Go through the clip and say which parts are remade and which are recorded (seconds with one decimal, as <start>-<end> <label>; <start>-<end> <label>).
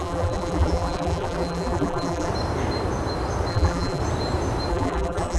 0.0-2.3 remade; 2.3-3.5 recorded; 3.5-4.0 remade; 4.0-4.7 recorded; 4.7-5.4 remade